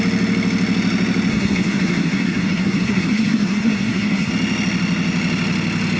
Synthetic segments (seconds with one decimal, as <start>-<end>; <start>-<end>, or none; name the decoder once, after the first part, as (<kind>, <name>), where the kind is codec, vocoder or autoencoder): 1.3-4.3 (codec, SNAC)